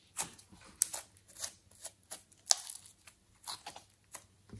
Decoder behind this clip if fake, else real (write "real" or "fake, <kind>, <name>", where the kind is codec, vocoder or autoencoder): real